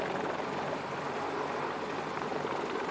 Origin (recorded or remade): recorded